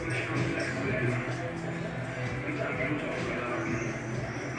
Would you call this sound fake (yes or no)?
no